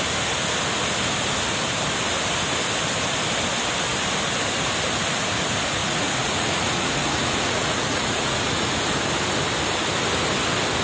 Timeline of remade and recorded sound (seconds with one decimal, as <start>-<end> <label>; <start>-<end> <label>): 0.0-5.8 recorded; 5.8-8.8 remade; 8.8-10.8 recorded